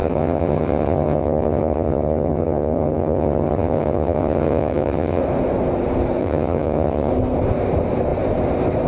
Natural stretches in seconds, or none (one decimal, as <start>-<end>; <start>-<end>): 5.2-6.2; 7.1-8.9